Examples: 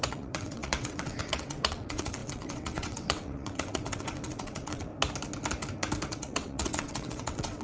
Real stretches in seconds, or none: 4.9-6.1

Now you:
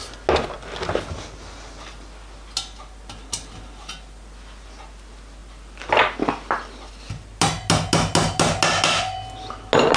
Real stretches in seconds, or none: 0.0-10.0

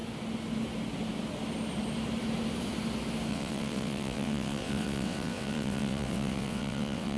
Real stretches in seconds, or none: 0.0-3.3

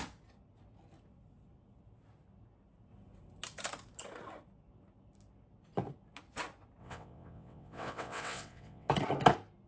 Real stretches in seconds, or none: 0.0-6.8; 8.9-9.7